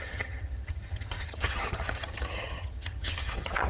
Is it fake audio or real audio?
fake